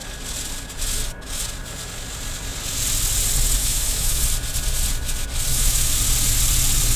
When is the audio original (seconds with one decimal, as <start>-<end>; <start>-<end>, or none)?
0.0-3.6; 4.2-5.5; 6.0-7.0